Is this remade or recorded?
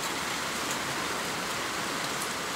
recorded